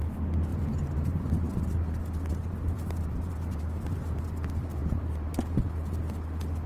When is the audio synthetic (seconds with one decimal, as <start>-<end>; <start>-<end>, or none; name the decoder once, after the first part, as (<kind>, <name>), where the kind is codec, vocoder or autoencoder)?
0.5-1.3 (vocoder, BigVGAN v2); 2.3-4.2; 4.8-5.4